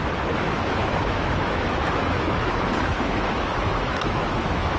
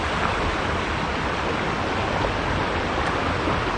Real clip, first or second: second